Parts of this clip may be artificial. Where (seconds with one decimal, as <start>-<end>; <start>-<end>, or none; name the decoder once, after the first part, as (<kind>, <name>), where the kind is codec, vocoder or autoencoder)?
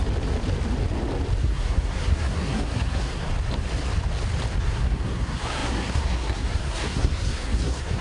1.4-3.3 (codec, SNAC); 4.6-8.0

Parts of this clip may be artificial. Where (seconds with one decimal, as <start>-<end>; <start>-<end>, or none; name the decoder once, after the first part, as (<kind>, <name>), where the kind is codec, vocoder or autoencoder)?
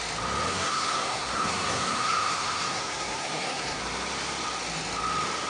0.5-3.8 (codec, SNAC)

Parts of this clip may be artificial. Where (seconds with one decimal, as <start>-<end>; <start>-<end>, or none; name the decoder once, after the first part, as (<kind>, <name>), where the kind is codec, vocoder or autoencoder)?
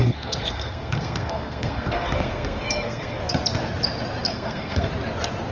0.0-3.2 (codec, SNAC); 4.3-4.9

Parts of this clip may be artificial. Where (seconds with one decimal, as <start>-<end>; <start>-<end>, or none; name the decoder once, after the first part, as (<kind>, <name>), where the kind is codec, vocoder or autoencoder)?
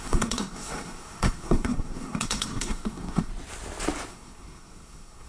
0.0-3.3 (codec, SNAC); 4.1-5.3